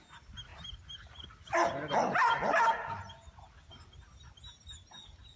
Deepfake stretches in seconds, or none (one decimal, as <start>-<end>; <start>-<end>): none

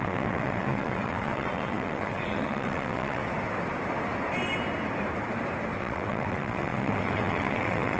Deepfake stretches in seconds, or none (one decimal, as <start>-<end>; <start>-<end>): 0.0-3.2; 5.8-8.0